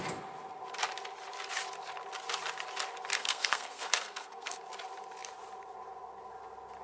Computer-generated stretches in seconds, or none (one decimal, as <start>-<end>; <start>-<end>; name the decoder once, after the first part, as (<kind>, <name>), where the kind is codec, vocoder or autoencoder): 3.2-4.6 (codec, SNAC)